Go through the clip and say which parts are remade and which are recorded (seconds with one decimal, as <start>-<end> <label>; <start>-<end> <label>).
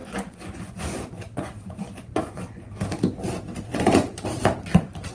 0.0-2.7 remade; 2.7-3.7 recorded; 3.7-4.2 remade; 4.2-5.1 recorded